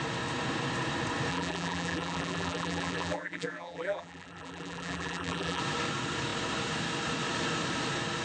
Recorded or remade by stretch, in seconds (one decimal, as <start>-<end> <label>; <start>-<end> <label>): 0.0-1.3 recorded; 1.3-5.6 remade; 5.6-8.2 recorded